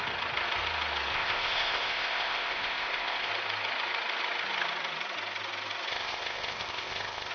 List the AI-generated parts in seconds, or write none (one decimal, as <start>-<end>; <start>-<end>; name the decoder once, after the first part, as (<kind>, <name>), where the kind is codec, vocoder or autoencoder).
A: 1.1-3.3 (codec, ZipCodec); 5.9-7.3